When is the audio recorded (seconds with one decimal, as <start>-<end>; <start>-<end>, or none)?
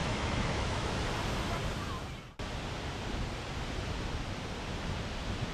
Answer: 0.9-5.5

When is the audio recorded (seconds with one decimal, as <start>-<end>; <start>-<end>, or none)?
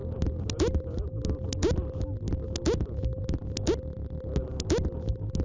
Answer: 0.0-5.4